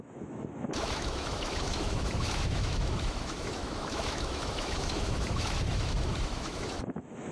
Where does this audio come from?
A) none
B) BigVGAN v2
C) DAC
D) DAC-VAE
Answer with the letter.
D